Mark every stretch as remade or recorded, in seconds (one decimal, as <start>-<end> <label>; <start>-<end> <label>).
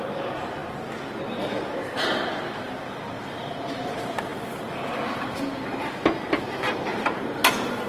0.0-6.9 recorded; 6.9-7.4 remade; 7.4-7.9 recorded